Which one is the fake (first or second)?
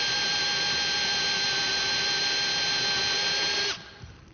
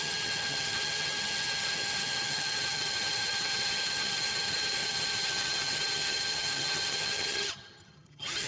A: second